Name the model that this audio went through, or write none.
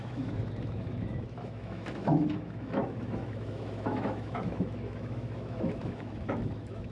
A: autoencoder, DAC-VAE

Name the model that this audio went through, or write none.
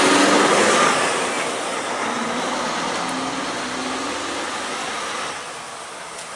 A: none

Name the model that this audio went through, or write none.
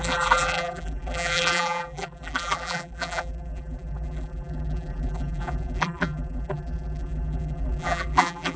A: vocoder, BigVGAN v2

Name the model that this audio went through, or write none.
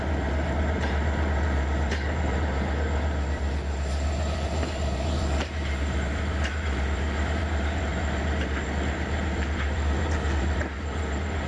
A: vocoder, BigVGAN v2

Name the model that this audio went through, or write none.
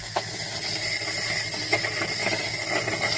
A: none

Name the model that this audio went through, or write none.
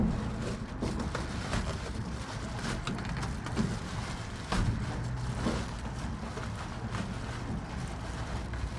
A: none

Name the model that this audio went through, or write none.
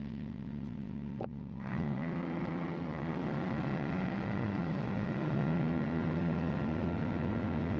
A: vocoder, WaveNeXt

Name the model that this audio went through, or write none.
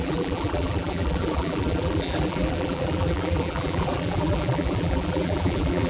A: vocoder, BigVGAN v2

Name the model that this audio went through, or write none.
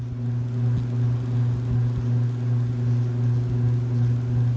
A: none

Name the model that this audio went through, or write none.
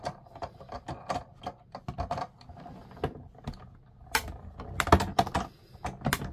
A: none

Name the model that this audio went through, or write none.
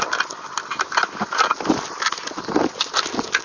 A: none